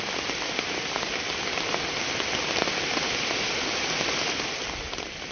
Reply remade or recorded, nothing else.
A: recorded